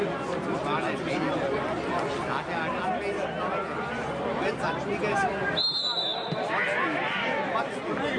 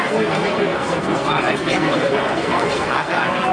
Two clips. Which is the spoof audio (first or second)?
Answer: second